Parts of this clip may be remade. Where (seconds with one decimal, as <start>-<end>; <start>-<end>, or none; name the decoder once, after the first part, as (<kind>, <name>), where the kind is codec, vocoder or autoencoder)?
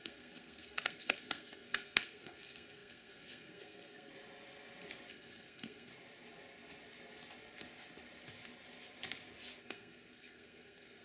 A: 0.0-4.1 (codec, SNAC); 5.1-5.9; 9.6-11.0